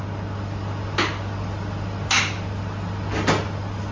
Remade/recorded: recorded